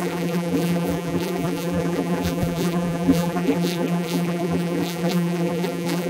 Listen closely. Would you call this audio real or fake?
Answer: fake